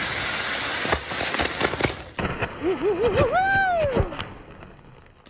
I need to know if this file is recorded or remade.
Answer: recorded